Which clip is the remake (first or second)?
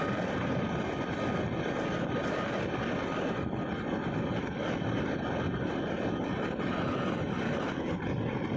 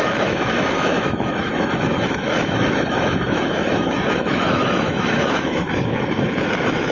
second